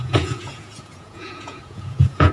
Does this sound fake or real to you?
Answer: fake